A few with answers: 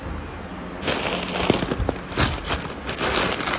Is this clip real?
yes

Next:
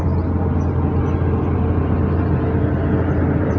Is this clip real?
yes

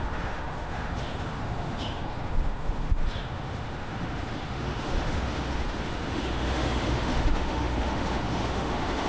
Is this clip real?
no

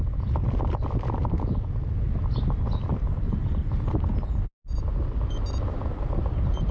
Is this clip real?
yes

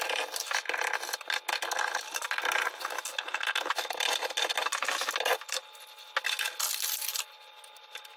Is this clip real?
yes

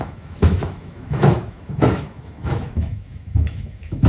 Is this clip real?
no